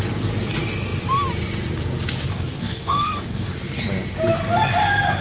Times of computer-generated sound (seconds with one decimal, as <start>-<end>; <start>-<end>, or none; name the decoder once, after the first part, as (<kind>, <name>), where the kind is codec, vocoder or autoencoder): 2.3-3.5 (codec, DAC)